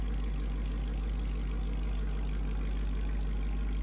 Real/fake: real